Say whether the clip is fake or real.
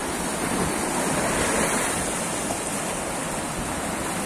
real